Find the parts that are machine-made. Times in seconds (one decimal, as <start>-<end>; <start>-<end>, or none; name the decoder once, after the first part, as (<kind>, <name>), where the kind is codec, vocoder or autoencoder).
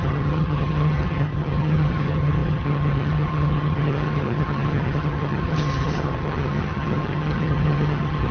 0.0-8.3 (vocoder, HiFi-GAN)